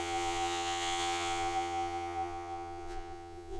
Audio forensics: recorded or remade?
remade